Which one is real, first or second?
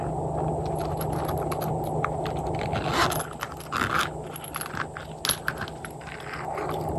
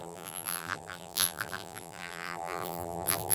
first